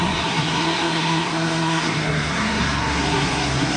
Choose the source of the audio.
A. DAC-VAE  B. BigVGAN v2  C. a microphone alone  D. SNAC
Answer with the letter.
D